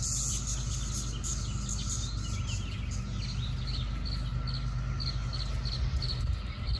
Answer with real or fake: real